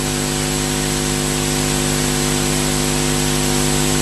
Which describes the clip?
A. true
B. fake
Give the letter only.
A